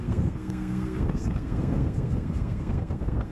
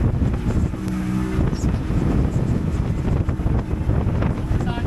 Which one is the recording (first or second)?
second